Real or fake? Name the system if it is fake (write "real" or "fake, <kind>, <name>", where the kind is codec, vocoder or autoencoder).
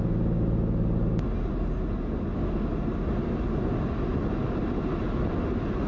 real